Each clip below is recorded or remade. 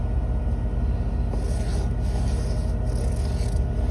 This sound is recorded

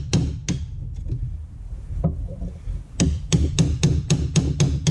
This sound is recorded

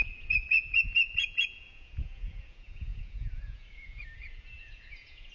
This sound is remade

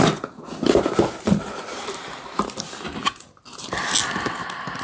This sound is recorded